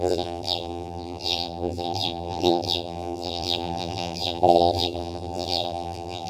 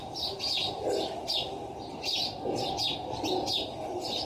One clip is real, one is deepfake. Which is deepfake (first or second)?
first